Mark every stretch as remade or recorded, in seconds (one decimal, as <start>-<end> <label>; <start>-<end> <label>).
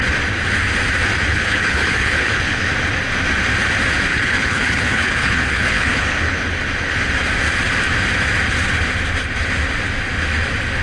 0.0-1.3 recorded; 1.3-2.7 remade; 2.7-4.1 recorded; 4.1-6.4 remade; 6.4-10.8 recorded